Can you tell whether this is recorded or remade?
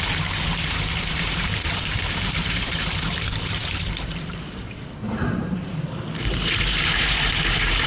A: remade